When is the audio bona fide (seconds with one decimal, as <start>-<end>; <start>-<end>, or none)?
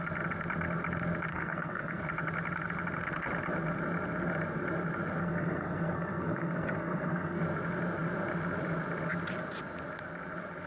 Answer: 0.0-1.3; 2.0-5.2; 7.4-10.7